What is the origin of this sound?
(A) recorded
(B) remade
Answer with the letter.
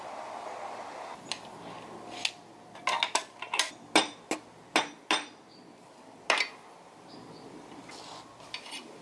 A